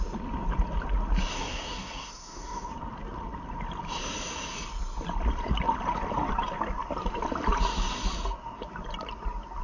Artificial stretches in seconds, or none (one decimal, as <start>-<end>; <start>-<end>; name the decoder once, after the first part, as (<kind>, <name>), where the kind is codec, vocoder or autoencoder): 1.3-2.7 (codec, SNAC)